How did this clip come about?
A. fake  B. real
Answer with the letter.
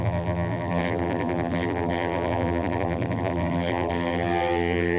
A